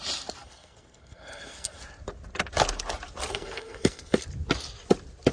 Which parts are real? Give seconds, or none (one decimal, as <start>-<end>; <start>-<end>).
0.0-0.4; 1.8-3.3; 4.2-5.3